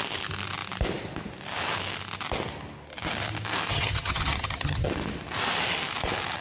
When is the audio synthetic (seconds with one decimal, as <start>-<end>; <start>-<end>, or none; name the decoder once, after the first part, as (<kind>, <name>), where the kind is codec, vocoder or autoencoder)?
3.7-4.9 (vocoder, HiFi-GAN)